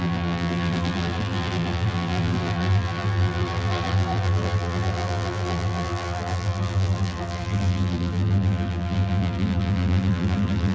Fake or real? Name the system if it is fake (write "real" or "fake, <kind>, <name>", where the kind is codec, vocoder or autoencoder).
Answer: fake, vocoder, BigVGAN v2